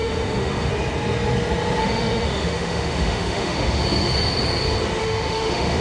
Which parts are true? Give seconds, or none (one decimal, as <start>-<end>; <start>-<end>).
0.7-1.8; 3.8-5.0